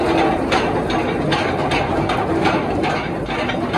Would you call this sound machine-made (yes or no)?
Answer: no